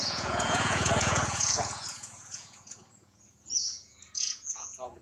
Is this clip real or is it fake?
fake